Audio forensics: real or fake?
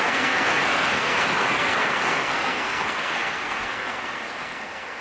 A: fake